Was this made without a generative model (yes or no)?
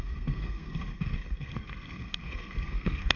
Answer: no